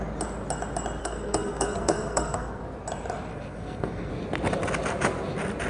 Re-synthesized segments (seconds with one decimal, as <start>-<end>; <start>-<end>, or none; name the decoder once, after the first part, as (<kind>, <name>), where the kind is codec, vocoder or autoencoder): 1.0-2.6 (codec, SNAC); 3.3-4.1